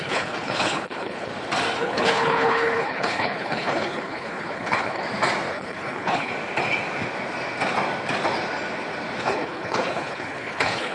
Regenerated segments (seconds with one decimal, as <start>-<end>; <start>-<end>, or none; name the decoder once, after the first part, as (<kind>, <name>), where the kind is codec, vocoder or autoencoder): 0.0-1.3 (codec, HILCodec); 1.8-5.0; 5.5-6.3; 9.2-10.9